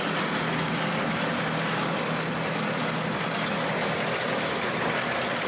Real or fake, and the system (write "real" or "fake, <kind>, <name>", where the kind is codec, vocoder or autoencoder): real